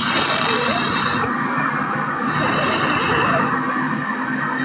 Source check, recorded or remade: recorded